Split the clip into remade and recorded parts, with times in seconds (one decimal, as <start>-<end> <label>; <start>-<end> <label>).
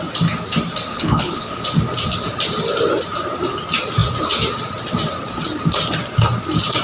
0.0-0.9 recorded; 0.9-1.6 remade; 1.6-6.8 recorded